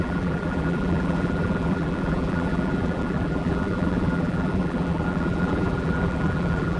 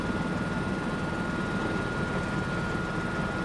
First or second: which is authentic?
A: second